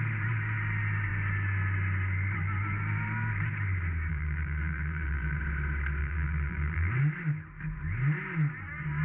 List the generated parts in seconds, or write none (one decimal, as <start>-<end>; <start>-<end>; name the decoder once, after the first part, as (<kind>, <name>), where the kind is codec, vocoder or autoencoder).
4.1-5.4 (vocoder, BigVGAN v2); 6.0-6.9

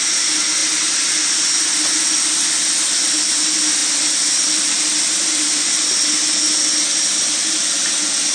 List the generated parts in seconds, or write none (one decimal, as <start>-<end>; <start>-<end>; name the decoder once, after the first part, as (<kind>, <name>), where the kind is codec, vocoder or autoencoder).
3.8-5.8 (vocoder, BigVGAN v2)